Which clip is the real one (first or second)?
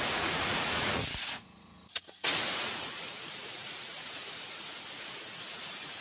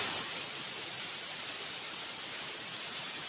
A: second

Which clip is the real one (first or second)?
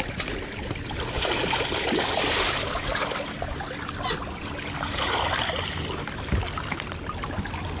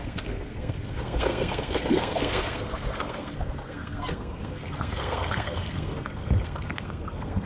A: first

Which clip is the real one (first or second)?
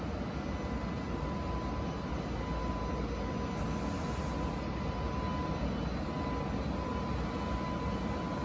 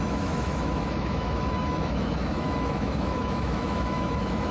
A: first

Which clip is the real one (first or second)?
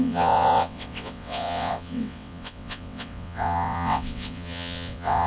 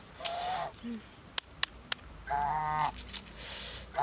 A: second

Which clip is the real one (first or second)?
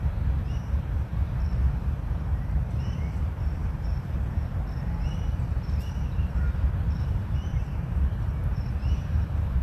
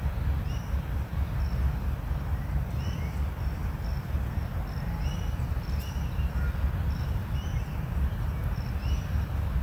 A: second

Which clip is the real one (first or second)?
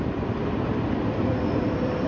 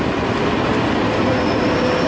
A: second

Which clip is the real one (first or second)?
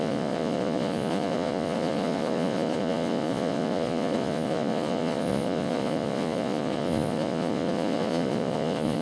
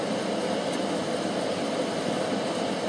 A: second